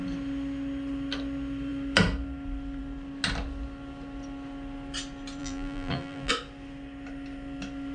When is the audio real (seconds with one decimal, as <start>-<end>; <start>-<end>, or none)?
0.0-5.4; 6.3-7.9